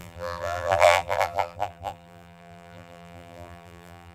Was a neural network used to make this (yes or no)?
yes